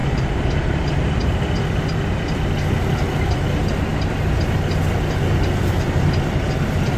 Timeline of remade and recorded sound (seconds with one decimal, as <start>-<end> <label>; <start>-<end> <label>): 0.0-1.4 remade; 1.4-3.9 recorded; 3.9-4.4 remade; 4.4-7.0 recorded